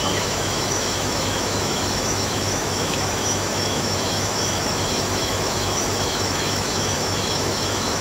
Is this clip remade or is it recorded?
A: remade